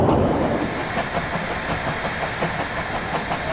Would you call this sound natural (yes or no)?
yes